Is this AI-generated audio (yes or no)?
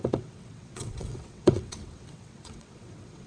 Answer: yes